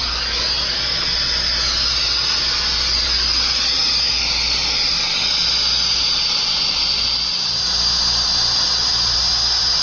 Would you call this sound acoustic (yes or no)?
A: yes